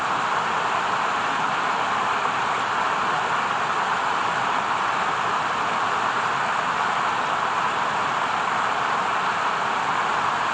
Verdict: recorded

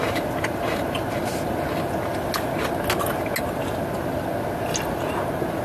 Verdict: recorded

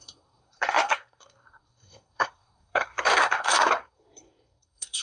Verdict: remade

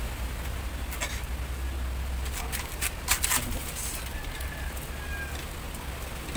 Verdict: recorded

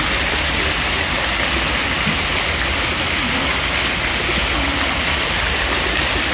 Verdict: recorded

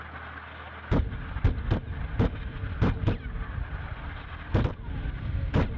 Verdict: recorded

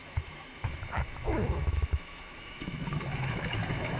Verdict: remade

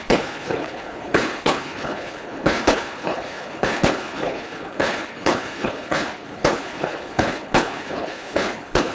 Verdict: remade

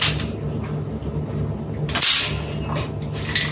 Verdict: recorded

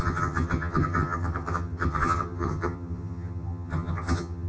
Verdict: remade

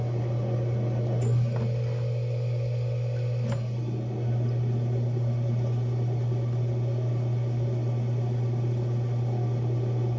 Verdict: recorded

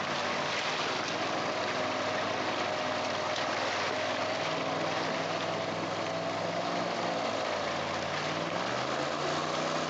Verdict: recorded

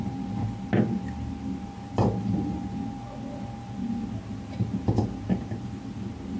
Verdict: recorded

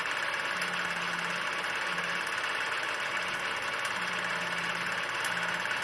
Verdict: recorded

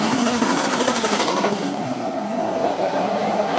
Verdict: remade